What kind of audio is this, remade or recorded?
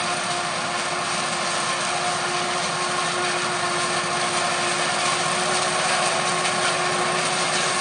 recorded